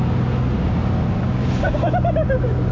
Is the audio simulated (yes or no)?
no